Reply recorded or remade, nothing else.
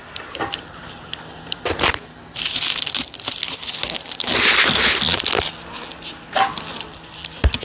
recorded